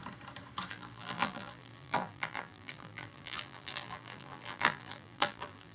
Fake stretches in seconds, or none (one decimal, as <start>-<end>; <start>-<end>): 0.7-5.7